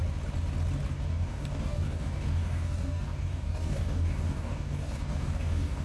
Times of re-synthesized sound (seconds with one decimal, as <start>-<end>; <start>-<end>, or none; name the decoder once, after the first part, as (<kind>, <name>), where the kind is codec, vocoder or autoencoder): 0.9-5.8 (codec, DAC)